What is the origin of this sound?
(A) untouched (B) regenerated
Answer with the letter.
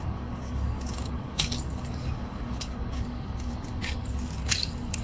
B